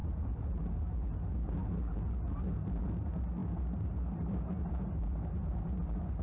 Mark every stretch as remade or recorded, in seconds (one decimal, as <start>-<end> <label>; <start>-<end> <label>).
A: 0.0-6.2 recorded